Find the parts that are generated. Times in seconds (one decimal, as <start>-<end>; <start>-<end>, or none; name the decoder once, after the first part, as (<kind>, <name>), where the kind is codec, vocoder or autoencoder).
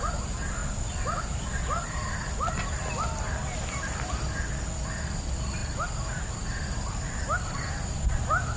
none